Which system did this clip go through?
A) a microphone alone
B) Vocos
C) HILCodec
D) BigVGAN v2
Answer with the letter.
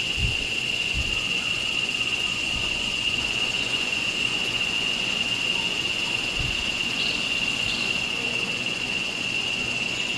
B